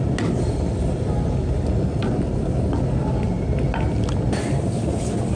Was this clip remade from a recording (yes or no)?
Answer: no